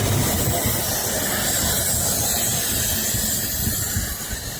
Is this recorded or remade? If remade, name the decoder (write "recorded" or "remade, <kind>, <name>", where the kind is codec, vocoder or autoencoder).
recorded